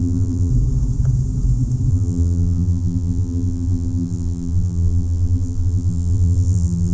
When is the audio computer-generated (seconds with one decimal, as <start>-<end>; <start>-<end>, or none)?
0.0-0.5; 1.9-6.9